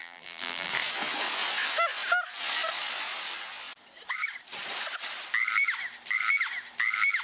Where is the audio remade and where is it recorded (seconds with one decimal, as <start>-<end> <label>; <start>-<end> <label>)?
0.0-0.7 remade; 0.7-7.2 recorded